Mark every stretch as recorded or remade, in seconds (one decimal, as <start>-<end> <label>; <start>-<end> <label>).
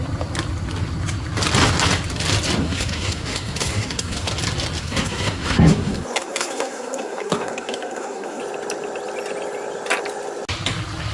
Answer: 0.0-2.6 recorded; 2.6-4.3 remade; 4.3-4.8 recorded; 4.8-8.4 remade; 8.4-11.1 recorded